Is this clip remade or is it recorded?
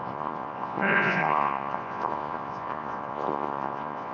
remade